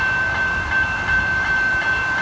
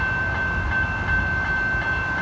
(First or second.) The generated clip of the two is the first